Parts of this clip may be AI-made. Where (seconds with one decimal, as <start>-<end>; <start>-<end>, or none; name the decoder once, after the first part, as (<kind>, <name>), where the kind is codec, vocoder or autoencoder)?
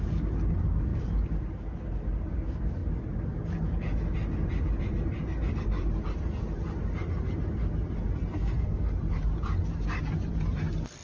8.3-8.9 (codec, SNAC)